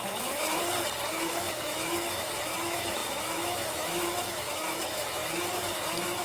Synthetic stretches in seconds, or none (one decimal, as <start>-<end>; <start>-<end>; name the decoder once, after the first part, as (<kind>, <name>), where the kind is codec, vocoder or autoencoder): 0.0-0.6 (autoencoder, DAC-VAE); 1.1-6.2